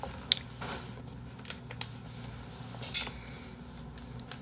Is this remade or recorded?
recorded